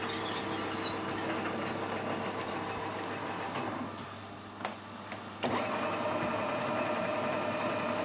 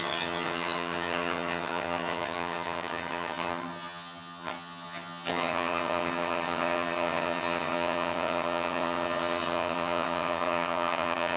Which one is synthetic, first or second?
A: second